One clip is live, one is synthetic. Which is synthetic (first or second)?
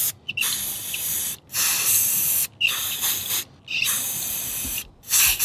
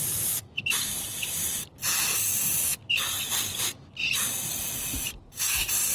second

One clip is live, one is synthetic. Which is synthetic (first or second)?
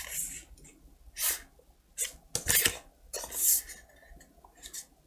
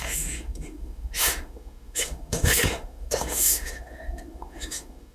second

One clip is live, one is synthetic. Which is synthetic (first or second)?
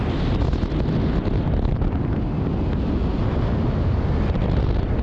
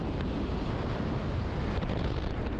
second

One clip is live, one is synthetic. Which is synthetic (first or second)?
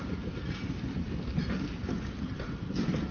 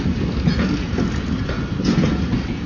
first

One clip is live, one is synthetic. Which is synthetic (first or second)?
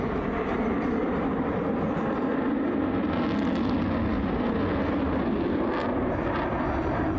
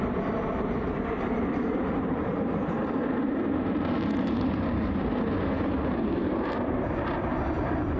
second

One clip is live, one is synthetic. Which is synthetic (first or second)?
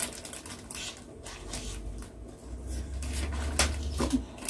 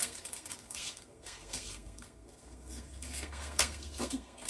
second